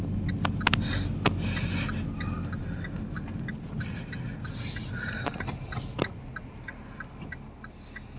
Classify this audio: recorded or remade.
recorded